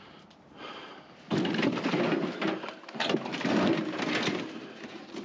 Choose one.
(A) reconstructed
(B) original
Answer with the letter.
B